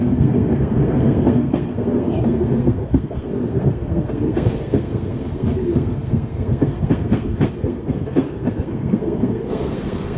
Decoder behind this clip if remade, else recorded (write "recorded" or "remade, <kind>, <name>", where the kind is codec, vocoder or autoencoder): remade, codec, SNAC